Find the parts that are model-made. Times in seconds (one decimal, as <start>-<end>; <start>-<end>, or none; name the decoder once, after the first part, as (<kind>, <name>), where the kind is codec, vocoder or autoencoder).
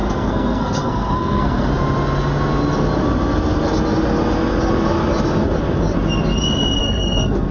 0.0-1.7 (codec, SNAC); 6.8-7.5